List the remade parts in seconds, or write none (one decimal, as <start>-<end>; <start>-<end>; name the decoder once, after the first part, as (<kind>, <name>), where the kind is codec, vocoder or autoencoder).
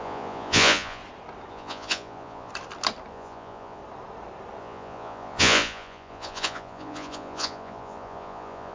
0.0-1.0 (vocoder, Vocos); 1.5-2.5; 3.1-3.8; 4.6-8.7